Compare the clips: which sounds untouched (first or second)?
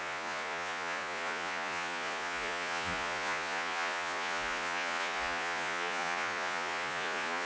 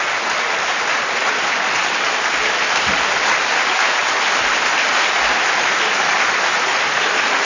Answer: second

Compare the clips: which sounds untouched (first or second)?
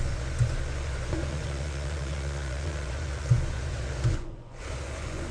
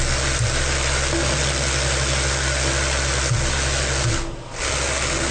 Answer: second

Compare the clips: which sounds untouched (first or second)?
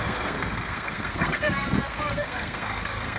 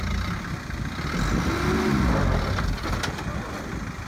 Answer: second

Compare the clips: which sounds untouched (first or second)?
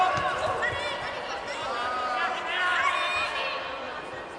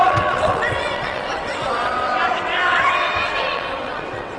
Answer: first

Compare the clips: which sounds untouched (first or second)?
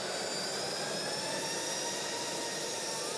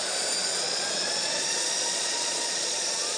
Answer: first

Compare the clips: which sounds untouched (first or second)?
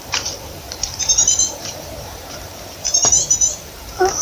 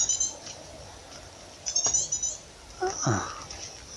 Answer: second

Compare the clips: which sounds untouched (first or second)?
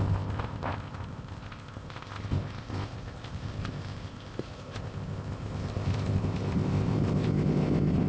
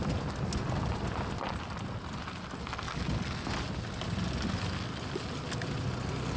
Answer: second